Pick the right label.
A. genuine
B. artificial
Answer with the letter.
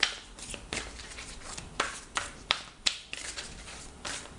B